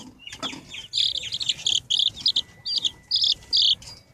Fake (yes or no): no